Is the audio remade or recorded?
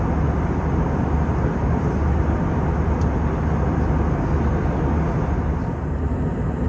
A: recorded